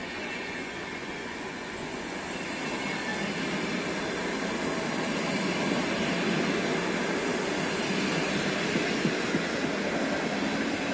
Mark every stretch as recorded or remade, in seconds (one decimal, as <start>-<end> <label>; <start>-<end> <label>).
0.0-2.2 remade; 2.2-10.9 recorded